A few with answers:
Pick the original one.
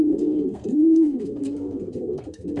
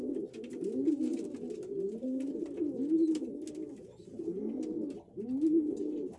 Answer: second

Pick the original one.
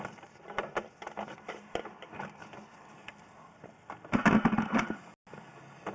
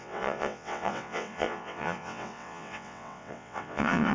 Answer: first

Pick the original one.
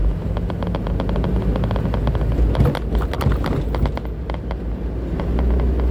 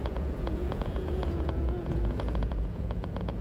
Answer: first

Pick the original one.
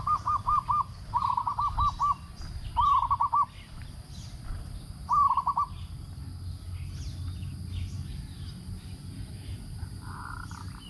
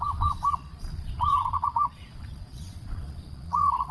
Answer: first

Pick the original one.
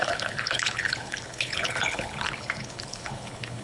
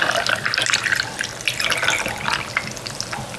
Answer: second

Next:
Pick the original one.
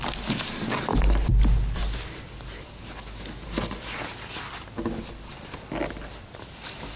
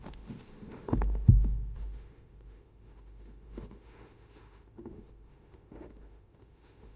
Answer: first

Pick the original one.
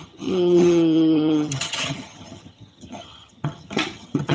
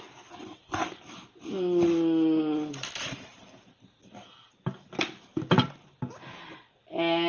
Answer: second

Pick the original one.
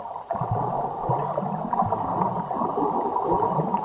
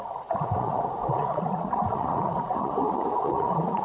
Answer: first